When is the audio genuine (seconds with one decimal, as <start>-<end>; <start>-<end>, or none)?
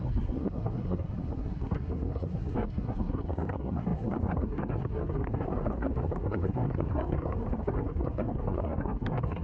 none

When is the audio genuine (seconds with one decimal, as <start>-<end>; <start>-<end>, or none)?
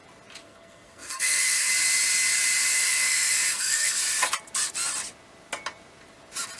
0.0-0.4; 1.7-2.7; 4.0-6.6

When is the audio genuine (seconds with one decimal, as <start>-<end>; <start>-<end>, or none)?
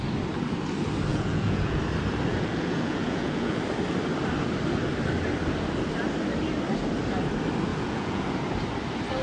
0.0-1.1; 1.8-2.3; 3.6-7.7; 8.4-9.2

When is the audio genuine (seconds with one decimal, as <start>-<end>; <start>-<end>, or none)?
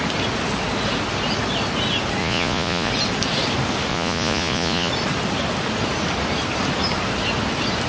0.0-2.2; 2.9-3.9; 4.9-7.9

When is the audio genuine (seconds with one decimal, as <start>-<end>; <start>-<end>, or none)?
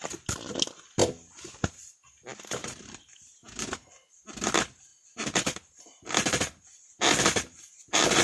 0.0-2.6; 3.4-4.9; 5.9-8.2